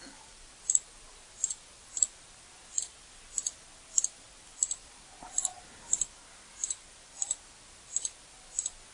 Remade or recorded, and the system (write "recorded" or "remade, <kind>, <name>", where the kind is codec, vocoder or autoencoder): recorded